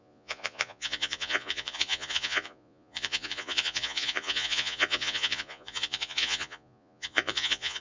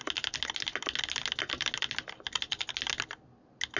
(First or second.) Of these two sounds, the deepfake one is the first